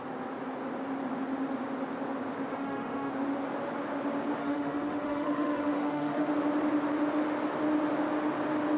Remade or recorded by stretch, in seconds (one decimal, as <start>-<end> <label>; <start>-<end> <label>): 0.0-2.5 recorded; 2.5-3.1 remade; 3.1-4.4 recorded; 4.4-6.3 remade; 6.3-8.8 recorded